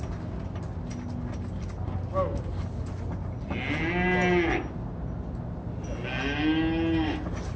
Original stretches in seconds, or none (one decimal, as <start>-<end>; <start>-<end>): 0.0-7.6